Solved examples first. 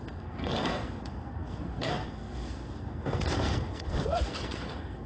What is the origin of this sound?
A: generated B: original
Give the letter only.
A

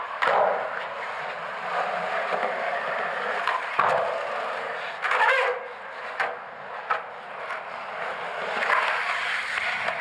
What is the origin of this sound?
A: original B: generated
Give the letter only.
A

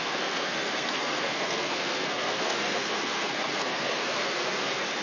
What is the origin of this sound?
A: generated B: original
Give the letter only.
A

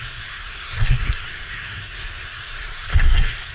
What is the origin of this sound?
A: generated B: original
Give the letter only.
A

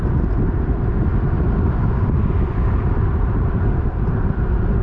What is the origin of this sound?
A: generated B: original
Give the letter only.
B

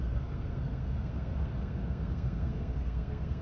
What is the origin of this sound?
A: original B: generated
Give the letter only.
B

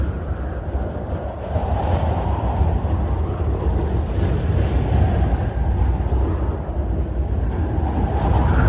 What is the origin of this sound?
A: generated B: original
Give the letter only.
B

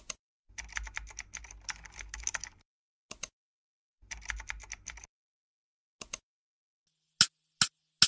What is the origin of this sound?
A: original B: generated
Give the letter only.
A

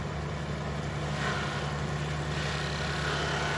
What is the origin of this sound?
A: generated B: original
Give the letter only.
B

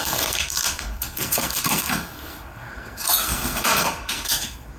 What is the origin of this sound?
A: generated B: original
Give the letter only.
A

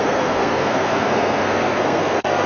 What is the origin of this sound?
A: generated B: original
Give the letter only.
A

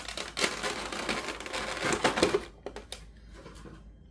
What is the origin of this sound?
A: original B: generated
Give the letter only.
A